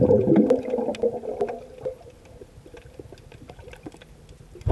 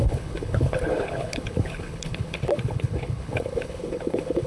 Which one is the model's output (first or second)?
second